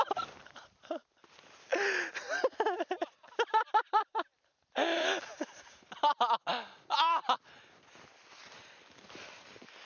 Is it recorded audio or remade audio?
recorded